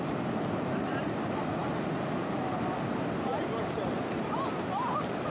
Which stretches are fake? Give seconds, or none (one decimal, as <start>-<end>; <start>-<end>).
none